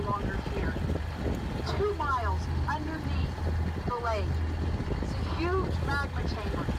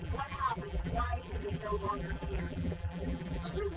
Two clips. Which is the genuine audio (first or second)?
first